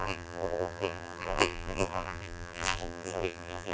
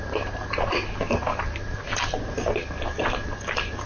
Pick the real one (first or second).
second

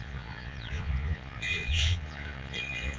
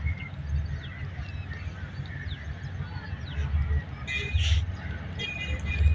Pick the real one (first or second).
second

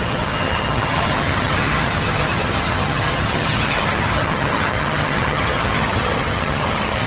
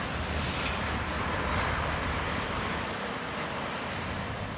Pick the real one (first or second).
second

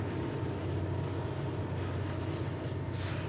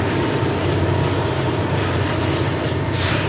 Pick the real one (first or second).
first